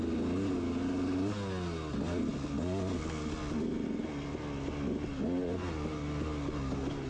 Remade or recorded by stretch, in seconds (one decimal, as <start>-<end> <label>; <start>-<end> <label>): 0.0-7.1 recorded